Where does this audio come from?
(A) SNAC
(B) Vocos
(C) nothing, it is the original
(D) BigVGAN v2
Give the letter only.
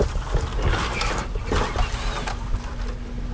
C